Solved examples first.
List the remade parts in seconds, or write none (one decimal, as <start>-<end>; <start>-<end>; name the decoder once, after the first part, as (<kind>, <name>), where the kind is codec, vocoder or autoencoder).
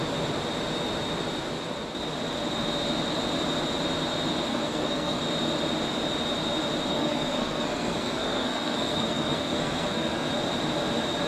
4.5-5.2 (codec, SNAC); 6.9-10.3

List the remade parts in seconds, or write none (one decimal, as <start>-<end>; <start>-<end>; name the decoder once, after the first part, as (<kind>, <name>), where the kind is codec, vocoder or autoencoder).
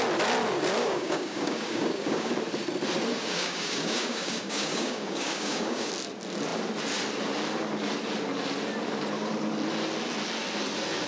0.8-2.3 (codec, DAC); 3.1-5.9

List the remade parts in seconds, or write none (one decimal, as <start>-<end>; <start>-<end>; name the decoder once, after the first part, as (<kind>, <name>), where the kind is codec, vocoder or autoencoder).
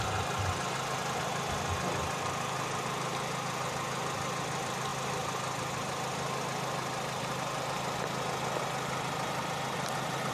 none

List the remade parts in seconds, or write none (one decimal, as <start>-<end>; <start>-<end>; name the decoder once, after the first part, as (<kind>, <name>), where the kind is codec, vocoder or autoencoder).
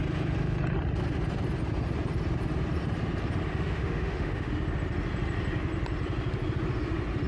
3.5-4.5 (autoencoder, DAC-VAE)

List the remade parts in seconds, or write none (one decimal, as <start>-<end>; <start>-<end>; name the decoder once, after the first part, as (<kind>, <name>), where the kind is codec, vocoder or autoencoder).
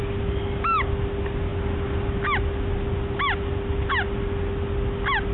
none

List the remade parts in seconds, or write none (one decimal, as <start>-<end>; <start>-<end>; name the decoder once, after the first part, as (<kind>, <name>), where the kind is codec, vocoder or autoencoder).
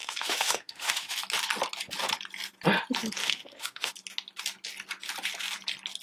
0.0-1.2 (autoencoder, DAC-VAE); 3.2-3.9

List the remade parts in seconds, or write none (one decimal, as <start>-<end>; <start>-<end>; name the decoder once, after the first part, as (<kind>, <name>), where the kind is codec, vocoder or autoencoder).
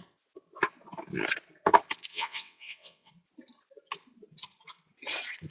2.1-3.1 (vocoder, WaveNeXt)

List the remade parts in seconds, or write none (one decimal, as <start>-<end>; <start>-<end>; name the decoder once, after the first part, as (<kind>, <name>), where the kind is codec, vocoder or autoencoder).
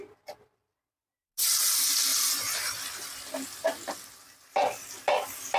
none